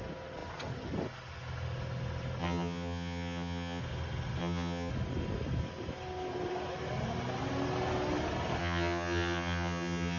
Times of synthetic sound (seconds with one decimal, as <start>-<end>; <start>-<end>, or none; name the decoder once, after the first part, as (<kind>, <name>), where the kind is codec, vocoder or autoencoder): 2.4-3.8 (vocoder, HiFi-GAN); 4.4-4.9; 8.6-10.2